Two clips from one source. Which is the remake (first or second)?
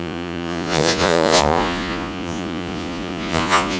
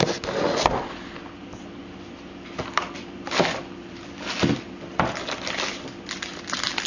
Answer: first